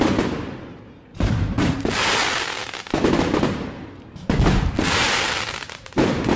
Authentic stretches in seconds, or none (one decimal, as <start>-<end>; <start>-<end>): 0.0-1.1; 1.9-6.4